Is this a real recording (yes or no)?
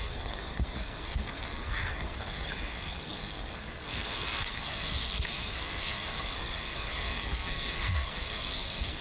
no